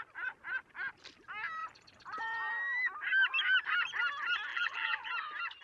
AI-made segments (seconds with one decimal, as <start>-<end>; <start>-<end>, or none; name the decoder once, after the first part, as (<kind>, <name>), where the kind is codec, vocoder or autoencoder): 4.5-5.1 (vocoder, BigVGAN v2)